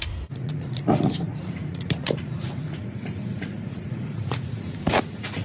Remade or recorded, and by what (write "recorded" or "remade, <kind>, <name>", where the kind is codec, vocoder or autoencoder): remade, vocoder, Vocos